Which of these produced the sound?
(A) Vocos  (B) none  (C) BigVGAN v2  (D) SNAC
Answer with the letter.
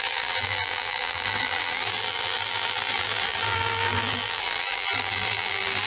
C